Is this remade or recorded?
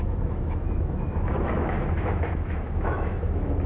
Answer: remade